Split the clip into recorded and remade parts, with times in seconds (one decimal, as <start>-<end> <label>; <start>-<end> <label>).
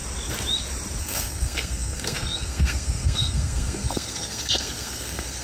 0.0-1.0 recorded; 1.0-5.4 remade